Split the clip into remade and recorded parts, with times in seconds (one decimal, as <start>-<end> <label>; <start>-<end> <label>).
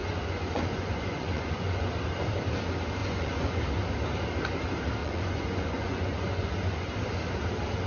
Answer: 0.0-1.9 remade; 1.9-3.0 recorded; 3.0-3.6 remade; 3.6-5.0 recorded; 5.0-6.9 remade; 6.9-7.9 recorded